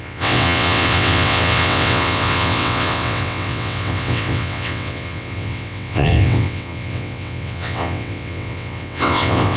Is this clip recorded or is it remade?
remade